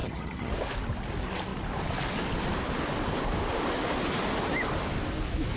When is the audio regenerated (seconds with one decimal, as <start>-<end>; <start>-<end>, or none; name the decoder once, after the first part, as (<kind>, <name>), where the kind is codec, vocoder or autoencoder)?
0.0-0.5 (vocoder, HiFi-GAN)